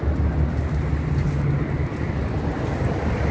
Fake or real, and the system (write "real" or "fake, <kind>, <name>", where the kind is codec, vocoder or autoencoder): real